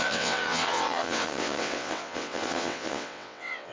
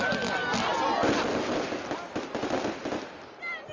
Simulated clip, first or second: first